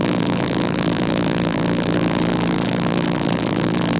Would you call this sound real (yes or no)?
no